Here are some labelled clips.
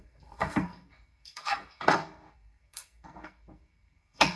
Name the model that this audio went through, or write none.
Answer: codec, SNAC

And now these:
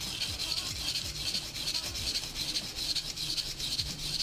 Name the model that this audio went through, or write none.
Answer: none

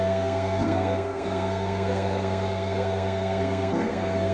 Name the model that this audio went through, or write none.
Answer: codec, SNAC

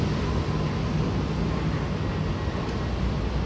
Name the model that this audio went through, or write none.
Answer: none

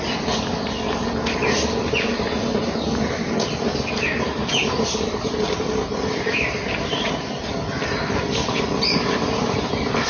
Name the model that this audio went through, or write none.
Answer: none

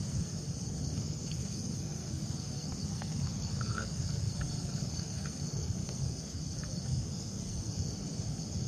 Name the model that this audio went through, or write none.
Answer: codec, SNAC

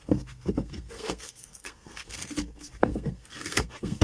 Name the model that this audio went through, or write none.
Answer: codec, SNAC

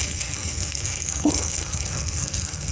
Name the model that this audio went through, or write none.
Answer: codec, SNAC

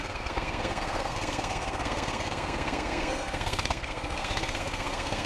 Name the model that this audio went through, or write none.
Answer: codec, SNAC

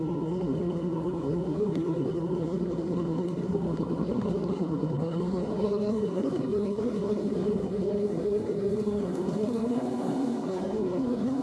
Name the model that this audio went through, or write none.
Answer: codec, SNAC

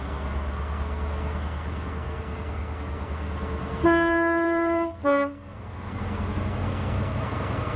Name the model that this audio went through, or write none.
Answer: codec, SNAC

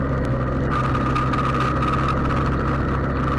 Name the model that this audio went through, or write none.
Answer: none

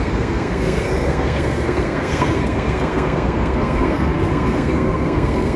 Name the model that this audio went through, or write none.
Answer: codec, SNAC